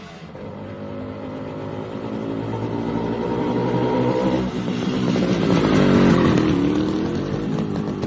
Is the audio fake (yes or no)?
no